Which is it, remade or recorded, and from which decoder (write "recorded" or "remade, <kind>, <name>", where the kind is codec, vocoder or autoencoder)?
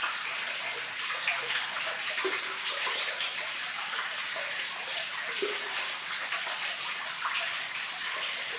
remade, vocoder, BigVGAN v2